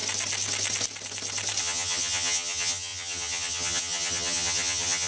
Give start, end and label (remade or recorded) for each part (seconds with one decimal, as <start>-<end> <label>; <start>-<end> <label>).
0.0-1.6 recorded; 1.6-5.1 remade